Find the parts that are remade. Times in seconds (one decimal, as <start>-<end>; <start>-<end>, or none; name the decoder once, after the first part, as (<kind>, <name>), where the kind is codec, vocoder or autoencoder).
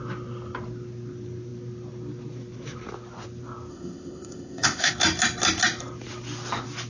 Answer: 3.7-4.9 (codec, ZipCodec)